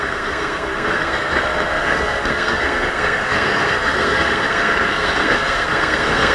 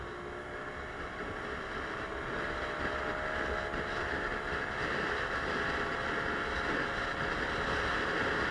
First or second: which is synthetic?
first